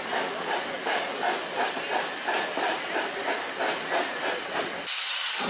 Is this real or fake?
real